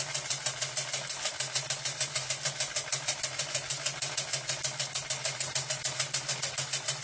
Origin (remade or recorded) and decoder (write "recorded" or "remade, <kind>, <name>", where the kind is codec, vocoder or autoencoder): recorded